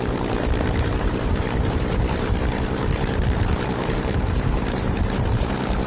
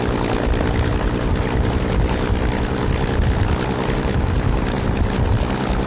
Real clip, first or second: second